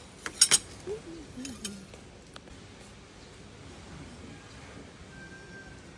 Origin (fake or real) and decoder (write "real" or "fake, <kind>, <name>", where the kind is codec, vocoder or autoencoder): real